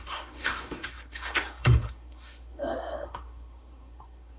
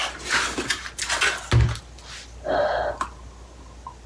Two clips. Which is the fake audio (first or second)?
first